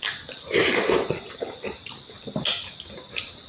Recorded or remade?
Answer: recorded